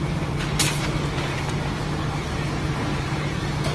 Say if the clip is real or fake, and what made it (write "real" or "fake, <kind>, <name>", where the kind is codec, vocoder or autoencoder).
real